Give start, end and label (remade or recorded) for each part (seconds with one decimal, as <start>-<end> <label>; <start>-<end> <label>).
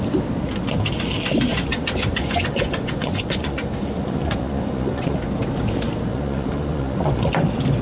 0.0-1.5 recorded; 1.5-5.2 remade; 5.2-6.1 recorded; 6.1-7.3 remade; 7.3-7.8 recorded